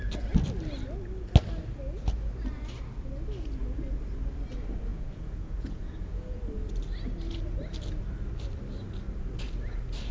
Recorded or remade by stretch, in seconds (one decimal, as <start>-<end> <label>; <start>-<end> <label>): 0.0-4.9 recorded; 4.9-6.4 remade; 6.4-10.1 recorded